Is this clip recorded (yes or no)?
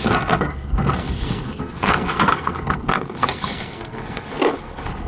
no